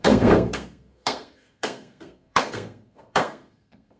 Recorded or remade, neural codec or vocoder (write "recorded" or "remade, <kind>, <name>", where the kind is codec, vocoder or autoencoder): remade, codec, SNAC